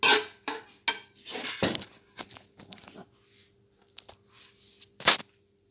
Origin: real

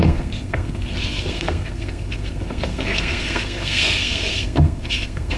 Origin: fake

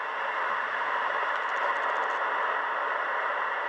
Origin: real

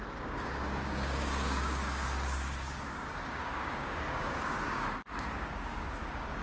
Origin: fake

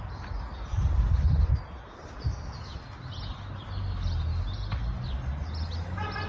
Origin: real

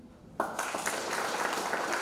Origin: real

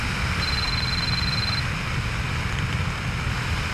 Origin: real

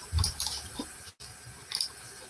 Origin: fake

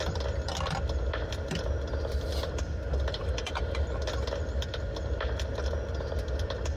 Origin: real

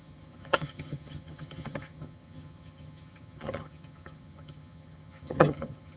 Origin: fake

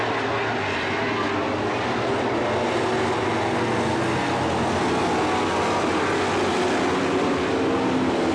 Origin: real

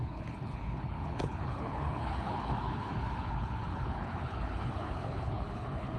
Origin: fake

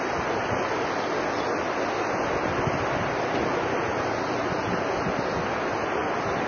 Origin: real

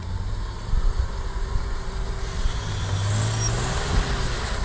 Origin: real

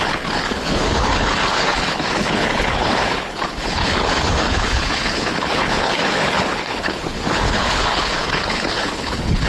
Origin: fake